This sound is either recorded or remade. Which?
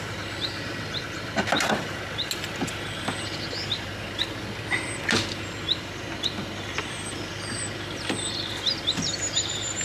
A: recorded